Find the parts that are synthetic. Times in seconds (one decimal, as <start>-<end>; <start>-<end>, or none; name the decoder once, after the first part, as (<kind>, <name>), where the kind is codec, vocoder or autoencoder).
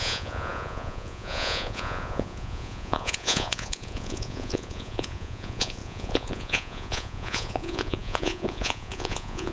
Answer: 0.0-9.5 (vocoder, Vocos)